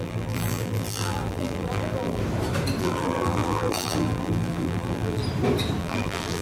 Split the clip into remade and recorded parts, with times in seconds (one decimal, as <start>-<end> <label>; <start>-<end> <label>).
0.0-2.2 remade; 2.2-2.8 recorded; 2.8-5.2 remade; 5.2-5.8 recorded; 5.8-6.4 remade